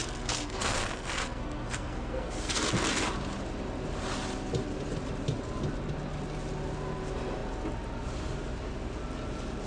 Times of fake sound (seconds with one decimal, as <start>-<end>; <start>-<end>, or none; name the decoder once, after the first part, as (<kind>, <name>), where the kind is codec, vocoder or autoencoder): 0.0-2.6 (codec, SNAC)